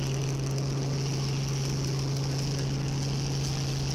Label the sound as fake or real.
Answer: real